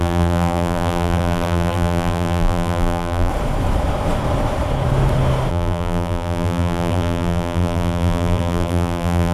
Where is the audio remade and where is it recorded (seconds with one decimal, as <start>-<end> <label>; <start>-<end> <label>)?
0.0-3.3 remade; 3.3-5.5 recorded; 5.5-9.3 remade